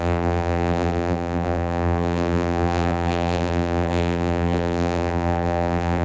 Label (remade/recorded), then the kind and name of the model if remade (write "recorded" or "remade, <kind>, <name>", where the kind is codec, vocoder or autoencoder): remade, vocoder, BigVGAN v2